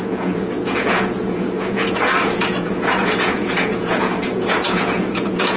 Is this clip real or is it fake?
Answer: fake